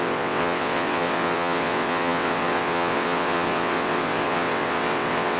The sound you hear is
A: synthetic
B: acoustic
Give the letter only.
A